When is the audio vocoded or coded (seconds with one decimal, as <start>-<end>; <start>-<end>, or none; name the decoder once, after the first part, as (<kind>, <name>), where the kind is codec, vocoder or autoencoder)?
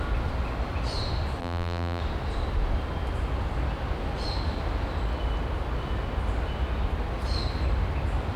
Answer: 1.4-2.0 (vocoder, BigVGAN v2)